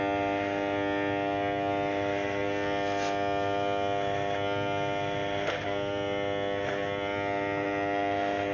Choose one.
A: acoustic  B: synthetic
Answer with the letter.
A